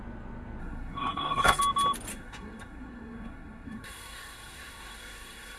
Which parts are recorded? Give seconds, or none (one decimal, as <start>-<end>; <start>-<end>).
0.0-0.6; 1.6-2.1